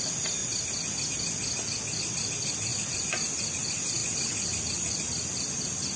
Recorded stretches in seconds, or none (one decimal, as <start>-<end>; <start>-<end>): 0.0-6.0